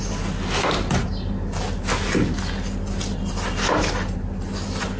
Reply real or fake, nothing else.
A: real